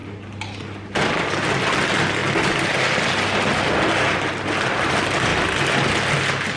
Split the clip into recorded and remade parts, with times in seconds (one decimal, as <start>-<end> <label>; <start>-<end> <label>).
0.0-2.2 remade; 2.2-4.3 recorded; 4.3-5.3 remade; 5.3-5.9 recorded; 5.9-6.6 remade